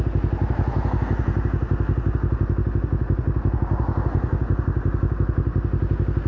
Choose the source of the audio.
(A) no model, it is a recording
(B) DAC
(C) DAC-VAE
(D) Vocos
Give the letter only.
A